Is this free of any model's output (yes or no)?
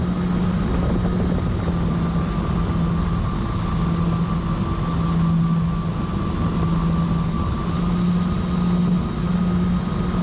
yes